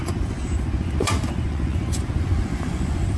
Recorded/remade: remade